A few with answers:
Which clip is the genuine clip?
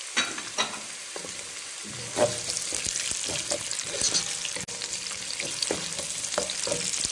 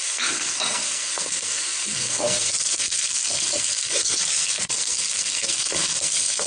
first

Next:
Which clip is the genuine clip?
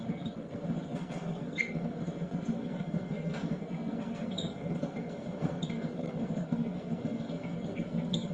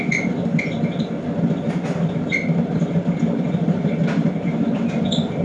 second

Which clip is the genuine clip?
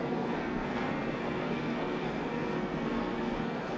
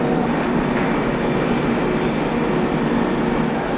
second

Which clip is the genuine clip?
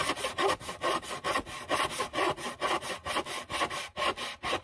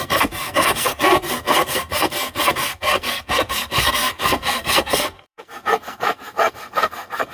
first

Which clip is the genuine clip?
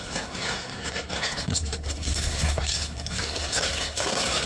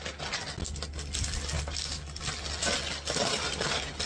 second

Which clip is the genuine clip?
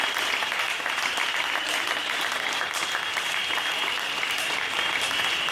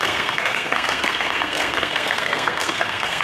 first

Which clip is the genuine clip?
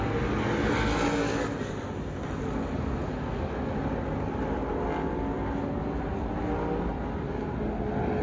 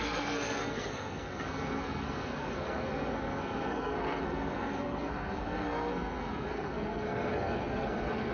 first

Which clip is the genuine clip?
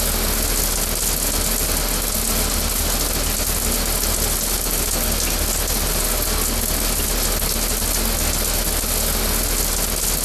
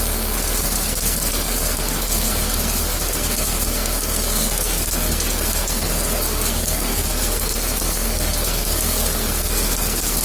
first